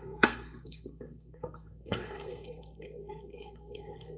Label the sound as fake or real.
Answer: fake